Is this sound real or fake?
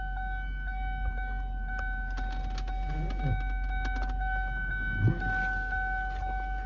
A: real